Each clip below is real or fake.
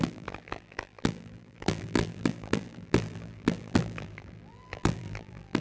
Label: fake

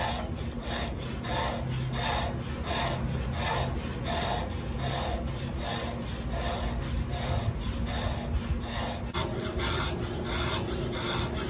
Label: real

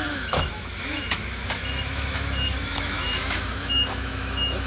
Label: fake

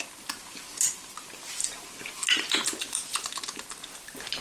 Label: real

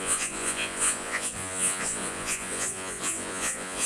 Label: fake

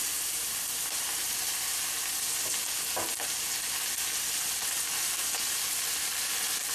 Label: real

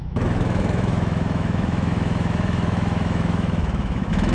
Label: fake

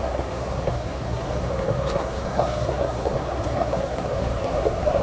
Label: fake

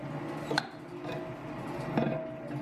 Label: real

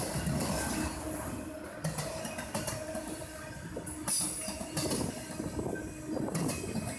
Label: real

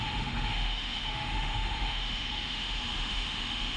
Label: fake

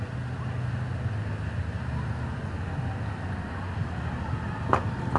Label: real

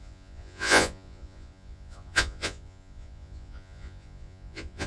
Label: fake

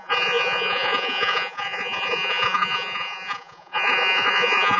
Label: fake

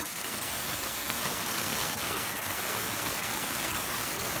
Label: fake